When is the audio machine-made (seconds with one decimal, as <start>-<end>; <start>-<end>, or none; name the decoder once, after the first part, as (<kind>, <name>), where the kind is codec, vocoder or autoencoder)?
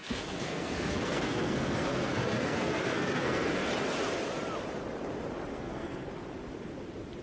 0.0-3.7 (codec, SNAC); 5.5-6.1